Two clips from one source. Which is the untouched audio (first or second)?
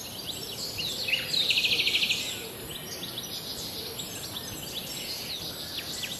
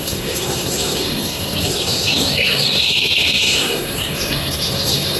first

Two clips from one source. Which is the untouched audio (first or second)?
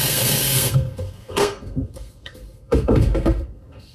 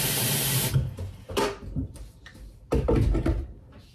second